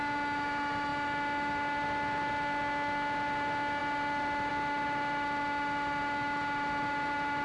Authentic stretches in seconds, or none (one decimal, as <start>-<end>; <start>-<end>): 0.0-7.4